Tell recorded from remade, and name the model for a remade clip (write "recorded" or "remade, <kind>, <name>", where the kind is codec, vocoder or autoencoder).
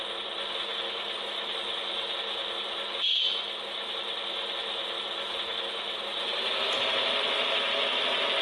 recorded